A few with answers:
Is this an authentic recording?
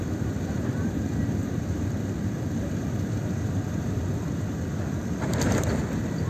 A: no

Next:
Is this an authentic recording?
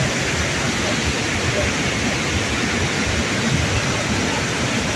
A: yes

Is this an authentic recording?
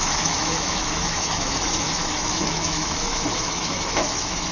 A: no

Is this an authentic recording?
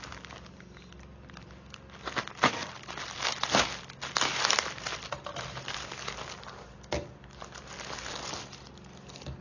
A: yes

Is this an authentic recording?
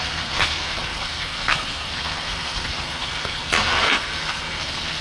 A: no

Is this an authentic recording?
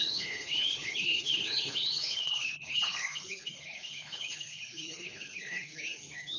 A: no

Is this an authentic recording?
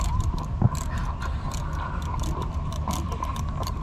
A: yes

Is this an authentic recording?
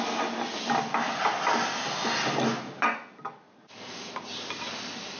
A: yes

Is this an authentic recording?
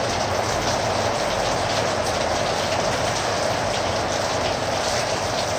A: yes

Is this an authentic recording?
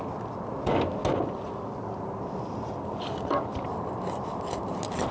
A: yes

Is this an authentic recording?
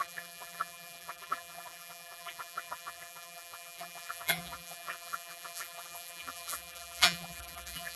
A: no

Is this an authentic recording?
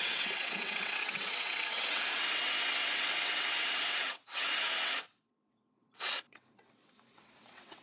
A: no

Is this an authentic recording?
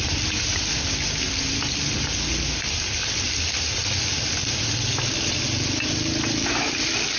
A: yes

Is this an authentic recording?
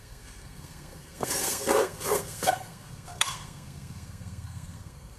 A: no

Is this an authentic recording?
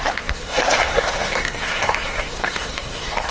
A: no